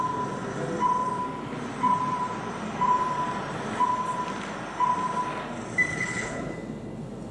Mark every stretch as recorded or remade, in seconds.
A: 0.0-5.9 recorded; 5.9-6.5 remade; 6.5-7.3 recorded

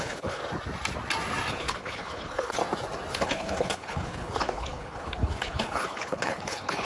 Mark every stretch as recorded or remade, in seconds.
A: 0.0-0.4 remade; 0.4-1.5 recorded; 1.5-2.6 remade; 2.6-3.1 recorded; 3.1-6.8 remade

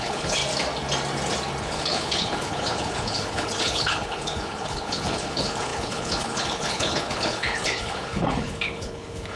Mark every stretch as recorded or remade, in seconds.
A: 0.0-0.4 remade; 0.4-1.6 recorded; 1.6-9.4 remade

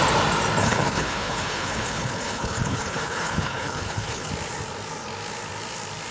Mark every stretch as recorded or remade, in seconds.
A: 0.0-0.6 recorded; 0.6-4.3 remade; 4.3-6.1 recorded